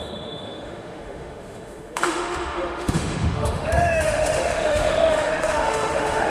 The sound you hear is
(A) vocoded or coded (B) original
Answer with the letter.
A